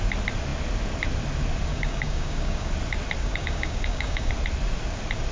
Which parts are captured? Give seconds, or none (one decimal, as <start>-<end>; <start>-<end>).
0.0-1.7; 2.7-3.2; 4.3-5.3